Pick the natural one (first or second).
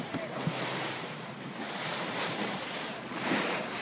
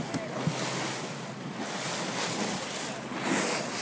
second